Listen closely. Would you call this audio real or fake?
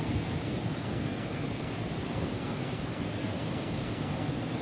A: fake